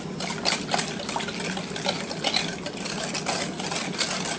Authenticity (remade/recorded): recorded